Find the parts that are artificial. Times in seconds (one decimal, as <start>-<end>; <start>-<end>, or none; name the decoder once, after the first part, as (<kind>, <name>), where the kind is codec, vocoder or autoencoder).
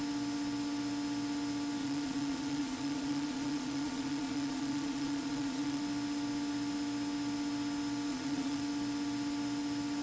1.8-5.8 (vocoder, Vocos); 8.1-8.6